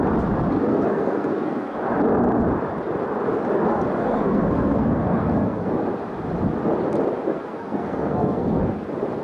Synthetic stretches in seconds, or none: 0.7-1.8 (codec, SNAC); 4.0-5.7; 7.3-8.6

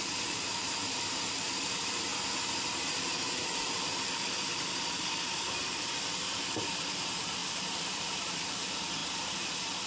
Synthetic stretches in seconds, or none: 0.0-2.1 (vocoder, BigVGAN v2); 3.0-9.0

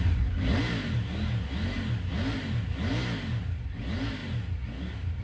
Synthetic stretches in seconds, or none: none

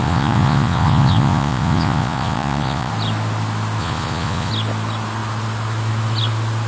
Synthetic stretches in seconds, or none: 0.0-2.9 (vocoder, Vocos); 3.8-4.5